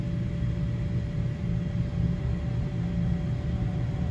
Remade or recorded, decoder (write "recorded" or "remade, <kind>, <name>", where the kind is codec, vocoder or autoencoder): recorded